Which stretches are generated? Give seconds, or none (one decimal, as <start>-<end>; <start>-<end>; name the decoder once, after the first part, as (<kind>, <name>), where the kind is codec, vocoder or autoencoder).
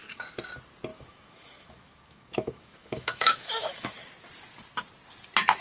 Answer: 0.9-3.9 (autoencoder, DAC-VAE)